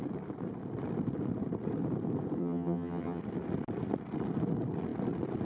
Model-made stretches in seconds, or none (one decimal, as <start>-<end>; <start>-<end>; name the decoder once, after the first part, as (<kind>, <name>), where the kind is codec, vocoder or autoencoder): 2.4-3.2 (vocoder, HiFi-GAN)